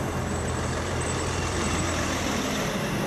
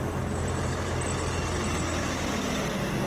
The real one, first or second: second